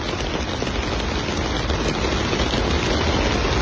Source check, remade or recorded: recorded